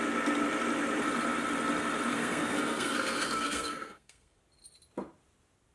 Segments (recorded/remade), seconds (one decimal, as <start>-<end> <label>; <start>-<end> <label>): 0.0-2.1 recorded; 2.1-4.4 remade; 4.4-5.7 recorded